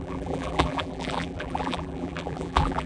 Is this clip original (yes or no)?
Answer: no